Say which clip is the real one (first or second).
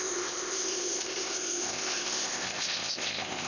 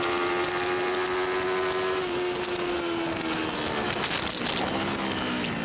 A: second